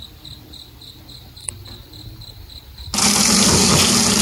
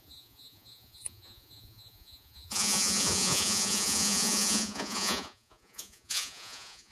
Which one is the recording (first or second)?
first